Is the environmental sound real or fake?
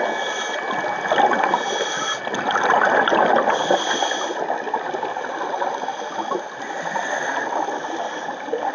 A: real